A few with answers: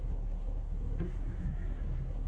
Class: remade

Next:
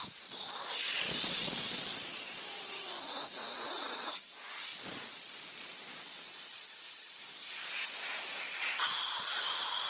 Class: remade